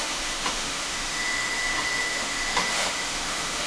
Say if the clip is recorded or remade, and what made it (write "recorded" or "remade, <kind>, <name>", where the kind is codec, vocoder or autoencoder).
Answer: remade, autoencoder, DAC-VAE